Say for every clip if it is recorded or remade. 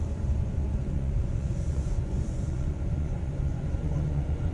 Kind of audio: remade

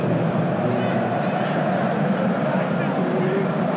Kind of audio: recorded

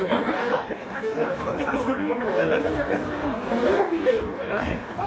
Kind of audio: remade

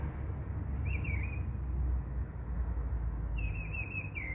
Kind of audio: recorded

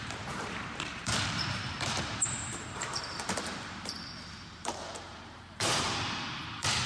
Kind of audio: remade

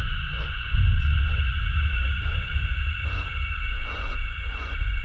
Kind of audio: remade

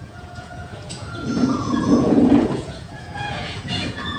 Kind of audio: remade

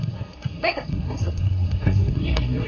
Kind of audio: remade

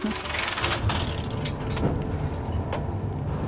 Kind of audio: recorded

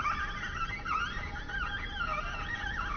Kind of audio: recorded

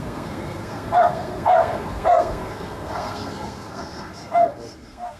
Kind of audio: remade